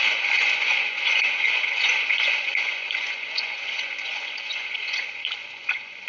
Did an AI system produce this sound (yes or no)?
yes